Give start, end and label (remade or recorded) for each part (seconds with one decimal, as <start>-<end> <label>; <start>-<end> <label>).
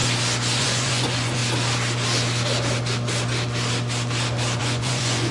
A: 0.0-0.6 recorded; 0.6-1.4 remade; 1.4-4.6 recorded; 4.6-5.3 remade